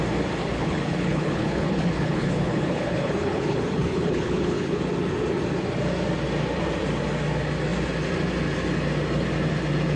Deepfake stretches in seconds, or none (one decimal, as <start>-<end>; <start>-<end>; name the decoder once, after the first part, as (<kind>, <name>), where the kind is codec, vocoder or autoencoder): 0.4-4.8 (codec, HILCodec)